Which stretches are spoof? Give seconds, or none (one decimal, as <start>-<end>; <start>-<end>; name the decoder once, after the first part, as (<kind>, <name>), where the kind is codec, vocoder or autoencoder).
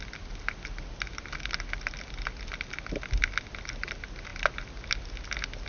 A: none